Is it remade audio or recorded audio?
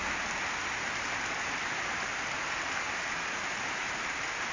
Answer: recorded